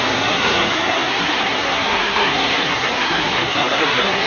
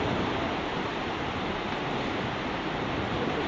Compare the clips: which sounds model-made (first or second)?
first